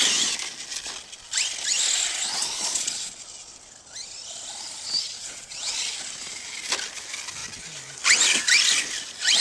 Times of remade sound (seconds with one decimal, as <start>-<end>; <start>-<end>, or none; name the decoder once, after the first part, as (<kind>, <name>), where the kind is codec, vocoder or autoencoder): 2.3-3.1 (vocoder, Vocos); 5.1-5.7